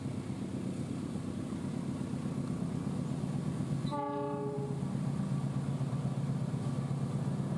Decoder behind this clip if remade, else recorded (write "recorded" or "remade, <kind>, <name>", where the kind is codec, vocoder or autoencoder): recorded